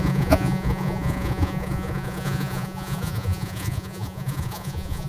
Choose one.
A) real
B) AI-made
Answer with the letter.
B